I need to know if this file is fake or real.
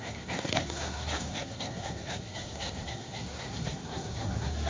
fake